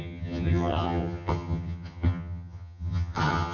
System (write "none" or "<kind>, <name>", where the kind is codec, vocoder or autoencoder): vocoder, HiFi-GAN